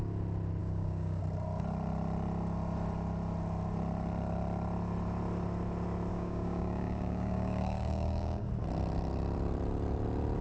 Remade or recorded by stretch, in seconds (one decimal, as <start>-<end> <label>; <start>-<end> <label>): 0.0-0.6 recorded; 0.6-1.2 remade; 1.2-6.1 recorded; 6.1-8.5 remade; 8.5-10.4 recorded